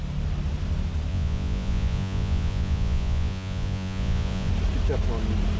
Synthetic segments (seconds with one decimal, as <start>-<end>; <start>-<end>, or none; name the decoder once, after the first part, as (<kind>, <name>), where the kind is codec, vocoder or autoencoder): 1.1-4.5 (vocoder, Vocos)